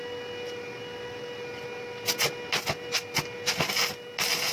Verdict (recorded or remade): recorded